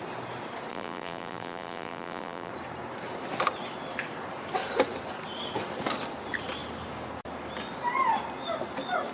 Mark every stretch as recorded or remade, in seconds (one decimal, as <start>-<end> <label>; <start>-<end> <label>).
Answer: 0.0-0.7 recorded; 0.7-2.5 remade; 2.5-9.1 recorded

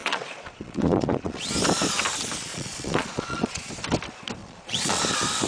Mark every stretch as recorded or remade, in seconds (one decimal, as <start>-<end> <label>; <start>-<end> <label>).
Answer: 0.0-1.5 remade; 1.5-2.5 recorded; 2.5-3.7 remade; 3.7-4.4 recorded; 4.4-5.0 remade; 5.0-5.5 recorded

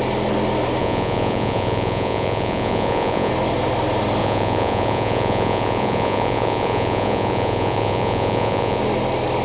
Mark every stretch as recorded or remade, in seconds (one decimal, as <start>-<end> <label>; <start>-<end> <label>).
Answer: 0.0-0.8 recorded; 0.8-3.3 remade; 3.3-4.2 recorded; 4.2-8.8 remade; 8.8-9.4 recorded

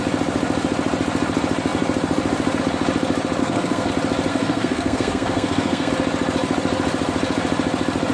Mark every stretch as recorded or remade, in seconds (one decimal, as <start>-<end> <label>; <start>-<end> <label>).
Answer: 0.0-3.4 recorded; 3.4-3.9 remade; 3.9-4.3 recorded; 4.3-5.9 remade; 5.9-8.1 recorded